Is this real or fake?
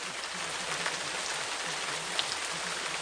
real